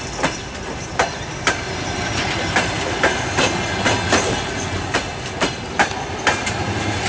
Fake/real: real